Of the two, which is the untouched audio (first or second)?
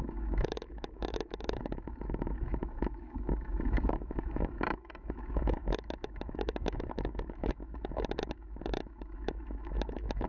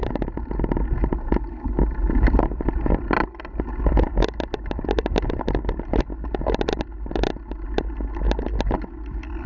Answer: second